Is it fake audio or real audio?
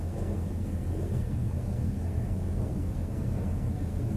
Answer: fake